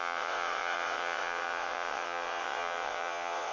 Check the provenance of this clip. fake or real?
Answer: fake